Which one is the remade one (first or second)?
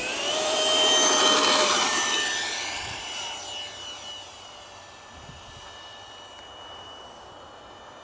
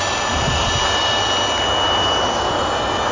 first